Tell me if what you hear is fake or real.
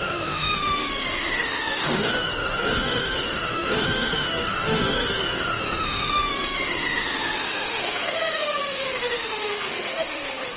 fake